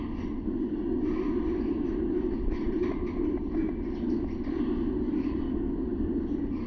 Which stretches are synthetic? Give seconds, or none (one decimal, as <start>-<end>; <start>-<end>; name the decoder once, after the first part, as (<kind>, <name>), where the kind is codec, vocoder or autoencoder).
none